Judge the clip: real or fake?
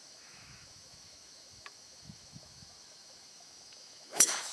fake